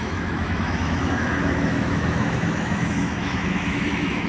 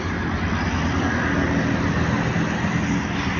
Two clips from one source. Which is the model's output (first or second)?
first